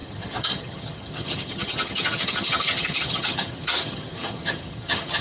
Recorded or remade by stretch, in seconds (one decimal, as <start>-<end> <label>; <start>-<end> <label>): 0.0-5.2 remade

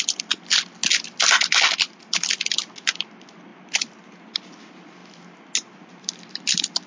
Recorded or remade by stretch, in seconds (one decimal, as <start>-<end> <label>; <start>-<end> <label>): 0.0-6.9 recorded

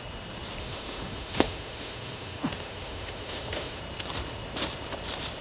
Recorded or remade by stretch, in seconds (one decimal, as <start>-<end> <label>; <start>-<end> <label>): 0.0-0.6 recorded; 0.6-3.8 remade; 3.8-5.4 recorded